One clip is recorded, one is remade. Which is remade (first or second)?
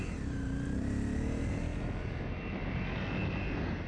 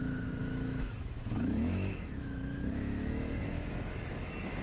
second